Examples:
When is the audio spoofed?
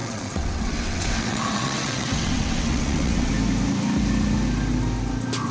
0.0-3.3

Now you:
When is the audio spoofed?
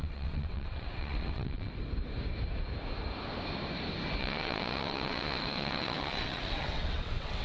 0.0-1.7; 4.2-7.4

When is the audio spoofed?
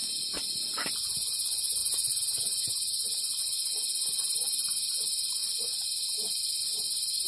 none